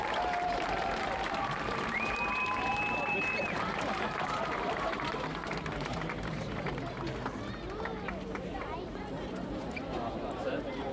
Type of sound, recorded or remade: remade